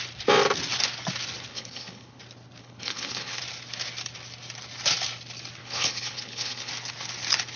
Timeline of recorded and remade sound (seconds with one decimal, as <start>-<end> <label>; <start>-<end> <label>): 0.0-1.5 recorded; 1.5-2.2 remade; 2.2-2.6 recorded; 2.6-3.4 remade; 3.4-5.6 recorded; 5.6-6.7 remade; 6.7-7.6 recorded